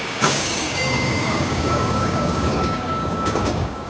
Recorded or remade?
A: remade